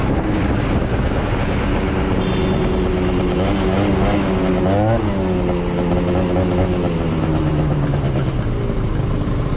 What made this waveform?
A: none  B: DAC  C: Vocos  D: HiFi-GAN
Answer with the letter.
A